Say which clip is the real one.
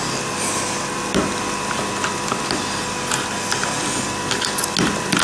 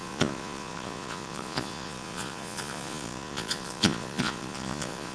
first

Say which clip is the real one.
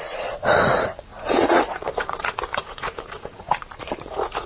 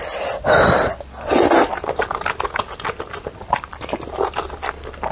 second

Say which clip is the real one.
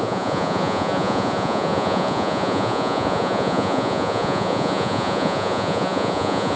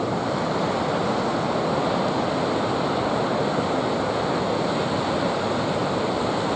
second